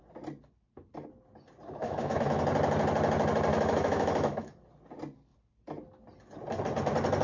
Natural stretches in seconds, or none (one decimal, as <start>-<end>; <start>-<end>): 0.0-1.8; 2.4-3.5; 4.5-7.2